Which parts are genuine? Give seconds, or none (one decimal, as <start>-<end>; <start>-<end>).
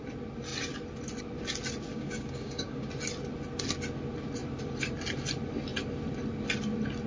0.0-1.9; 2.9-7.1